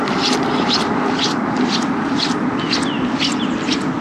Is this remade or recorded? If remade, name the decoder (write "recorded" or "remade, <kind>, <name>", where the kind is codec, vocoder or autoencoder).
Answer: recorded